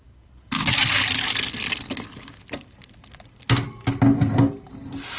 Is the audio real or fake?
real